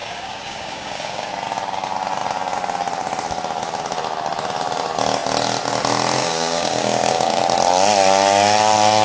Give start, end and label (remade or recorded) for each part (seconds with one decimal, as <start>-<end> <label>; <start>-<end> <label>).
0.0-1.3 remade; 1.3-6.2 recorded; 6.2-7.4 remade; 7.4-9.0 recorded